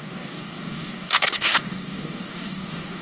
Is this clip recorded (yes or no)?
no